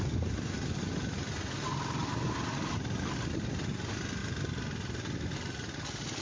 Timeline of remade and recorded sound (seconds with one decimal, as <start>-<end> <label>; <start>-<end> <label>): 0.0-6.2 recorded

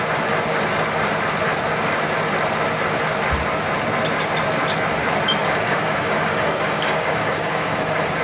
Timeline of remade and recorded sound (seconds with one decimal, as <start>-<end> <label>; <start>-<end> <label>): 0.0-5.4 recorded; 5.4-8.2 remade

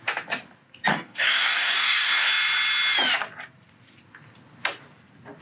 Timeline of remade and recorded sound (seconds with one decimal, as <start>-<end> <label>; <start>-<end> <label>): 0.0-0.9 recorded; 0.9-2.3 remade; 2.3-5.4 recorded